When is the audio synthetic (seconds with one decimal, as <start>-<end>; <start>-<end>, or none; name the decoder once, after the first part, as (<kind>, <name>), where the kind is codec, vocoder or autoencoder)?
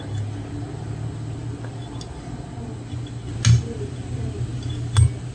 none